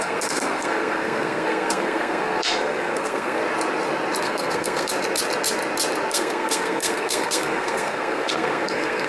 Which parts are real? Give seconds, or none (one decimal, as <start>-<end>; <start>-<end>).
3.4-4.2; 4.9-6.1